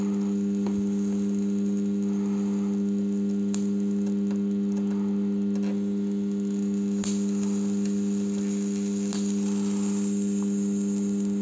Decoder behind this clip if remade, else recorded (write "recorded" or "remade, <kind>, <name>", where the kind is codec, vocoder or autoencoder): recorded